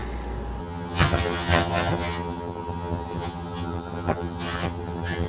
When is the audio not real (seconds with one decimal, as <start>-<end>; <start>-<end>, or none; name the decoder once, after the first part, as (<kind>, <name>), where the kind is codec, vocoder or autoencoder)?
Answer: 0.6-5.3 (vocoder, HiFi-GAN)